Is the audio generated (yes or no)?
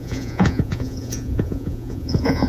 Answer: yes